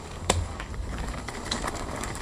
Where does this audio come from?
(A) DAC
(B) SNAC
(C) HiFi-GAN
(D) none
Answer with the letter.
A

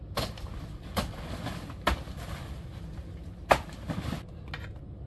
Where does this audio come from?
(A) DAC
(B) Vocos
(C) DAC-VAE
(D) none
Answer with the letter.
D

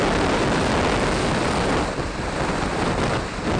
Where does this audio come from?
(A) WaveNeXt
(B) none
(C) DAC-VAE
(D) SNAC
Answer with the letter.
B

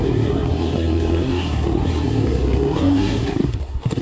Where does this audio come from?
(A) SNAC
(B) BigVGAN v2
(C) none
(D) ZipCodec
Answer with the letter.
A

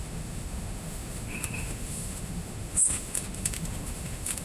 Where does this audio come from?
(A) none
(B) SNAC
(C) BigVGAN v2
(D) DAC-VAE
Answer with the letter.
D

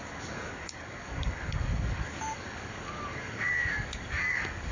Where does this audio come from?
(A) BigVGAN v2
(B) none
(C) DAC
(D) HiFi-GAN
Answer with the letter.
C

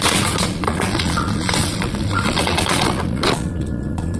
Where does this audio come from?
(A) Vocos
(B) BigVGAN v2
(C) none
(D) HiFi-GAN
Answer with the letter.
A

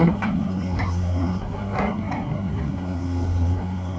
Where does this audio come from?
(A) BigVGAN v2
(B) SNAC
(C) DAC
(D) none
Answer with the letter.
B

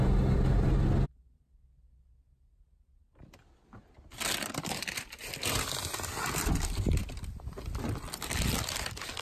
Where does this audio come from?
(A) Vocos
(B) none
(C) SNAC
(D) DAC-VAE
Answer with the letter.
B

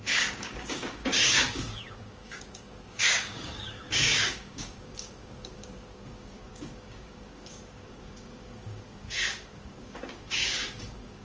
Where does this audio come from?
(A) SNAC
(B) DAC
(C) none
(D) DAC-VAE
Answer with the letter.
B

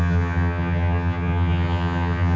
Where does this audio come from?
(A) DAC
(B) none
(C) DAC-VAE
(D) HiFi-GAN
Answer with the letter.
D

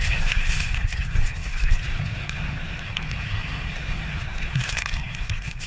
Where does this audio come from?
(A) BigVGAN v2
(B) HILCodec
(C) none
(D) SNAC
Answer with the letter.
D